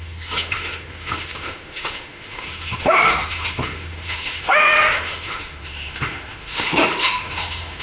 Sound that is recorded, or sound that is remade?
remade